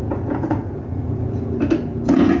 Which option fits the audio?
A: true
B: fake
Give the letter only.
B